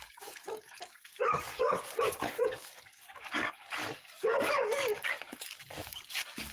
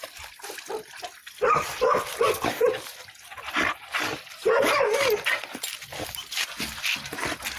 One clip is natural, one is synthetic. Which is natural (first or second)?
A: second